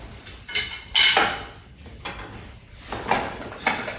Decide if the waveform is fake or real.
real